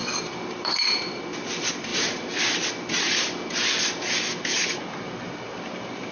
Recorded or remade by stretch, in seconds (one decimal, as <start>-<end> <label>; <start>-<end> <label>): 0.0-1.2 remade; 1.2-1.9 recorded; 1.9-2.4 remade; 2.4-6.1 recorded